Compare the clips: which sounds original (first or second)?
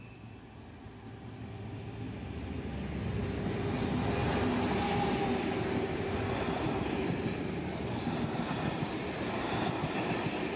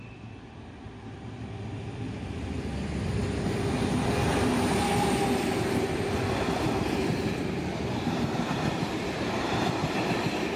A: first